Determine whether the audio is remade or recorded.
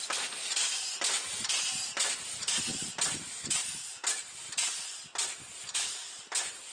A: recorded